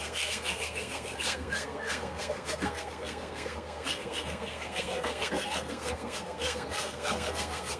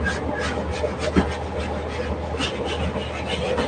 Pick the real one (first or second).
second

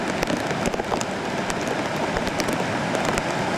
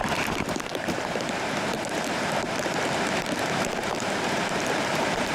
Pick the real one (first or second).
first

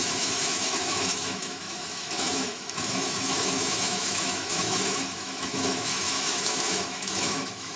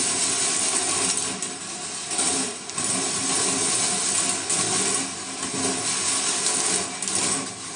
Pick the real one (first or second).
second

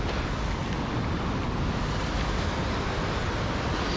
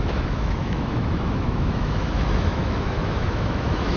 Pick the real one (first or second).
first